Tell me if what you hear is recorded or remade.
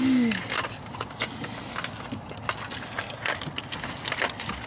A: recorded